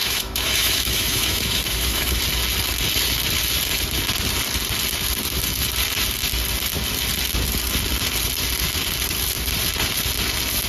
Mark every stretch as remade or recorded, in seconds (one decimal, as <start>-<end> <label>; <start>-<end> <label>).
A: 0.0-2.2 remade; 2.2-10.7 recorded